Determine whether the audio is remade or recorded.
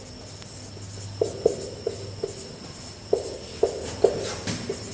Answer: recorded